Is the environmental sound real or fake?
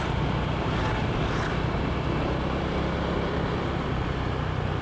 fake